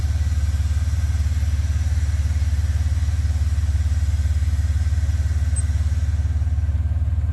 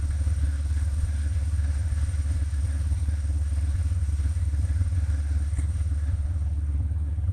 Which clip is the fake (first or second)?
second